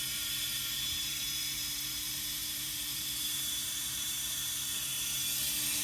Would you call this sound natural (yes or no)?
no